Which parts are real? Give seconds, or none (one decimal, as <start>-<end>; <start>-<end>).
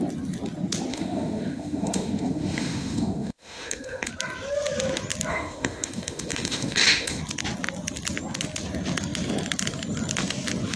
0.0-0.9; 4.1-5.3; 7.2-10.8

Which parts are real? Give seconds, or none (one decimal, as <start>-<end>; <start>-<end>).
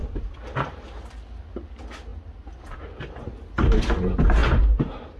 0.0-5.2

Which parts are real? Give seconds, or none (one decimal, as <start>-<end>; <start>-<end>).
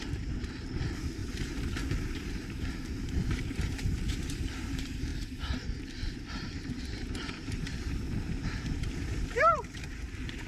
1.2-1.9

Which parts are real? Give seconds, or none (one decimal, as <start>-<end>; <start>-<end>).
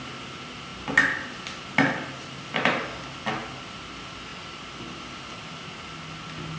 0.0-6.6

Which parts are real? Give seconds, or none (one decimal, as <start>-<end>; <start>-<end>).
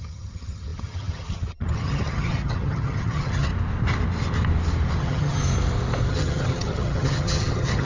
3.5-5.0; 5.4-6.1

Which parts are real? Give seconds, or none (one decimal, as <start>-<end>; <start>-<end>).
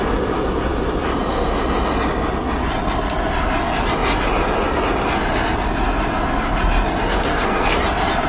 0.0-7.3; 7.8-8.3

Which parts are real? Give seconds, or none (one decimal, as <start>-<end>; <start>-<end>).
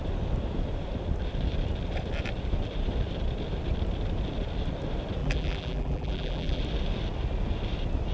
0.0-5.2; 6.6-8.1